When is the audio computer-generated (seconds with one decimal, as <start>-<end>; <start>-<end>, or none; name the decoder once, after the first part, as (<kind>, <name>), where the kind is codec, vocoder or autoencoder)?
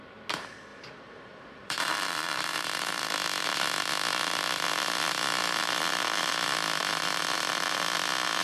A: 0.7-3.1 (vocoder, BigVGAN v2)